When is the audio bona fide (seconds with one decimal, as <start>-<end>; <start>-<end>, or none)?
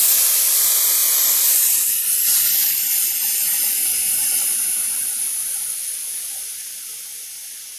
0.0-7.8